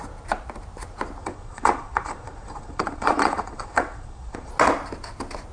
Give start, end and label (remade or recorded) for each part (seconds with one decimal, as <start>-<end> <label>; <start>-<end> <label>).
0.0-1.2 recorded; 1.2-4.5 remade; 4.5-5.5 recorded